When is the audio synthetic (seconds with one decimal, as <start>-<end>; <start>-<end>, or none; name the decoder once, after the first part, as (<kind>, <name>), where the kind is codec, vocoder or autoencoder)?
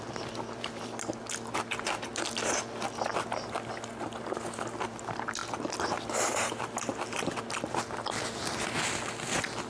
none